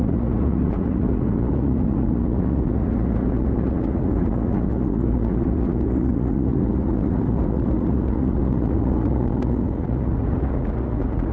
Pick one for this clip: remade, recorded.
remade